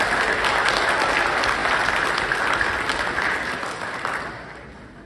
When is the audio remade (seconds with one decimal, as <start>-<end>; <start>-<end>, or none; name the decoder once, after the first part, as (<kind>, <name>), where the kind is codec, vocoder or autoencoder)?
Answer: none